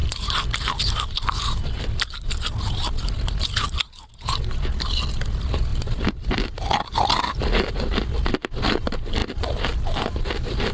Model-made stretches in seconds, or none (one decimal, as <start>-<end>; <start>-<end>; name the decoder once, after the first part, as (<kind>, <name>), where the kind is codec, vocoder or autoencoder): none